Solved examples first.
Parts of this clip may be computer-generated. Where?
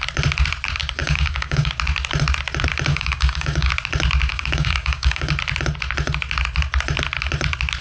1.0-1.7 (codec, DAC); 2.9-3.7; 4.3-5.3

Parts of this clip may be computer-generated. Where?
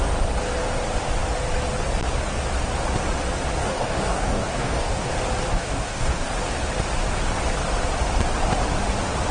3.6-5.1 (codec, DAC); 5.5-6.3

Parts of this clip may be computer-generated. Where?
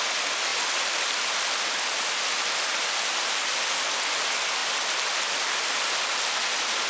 none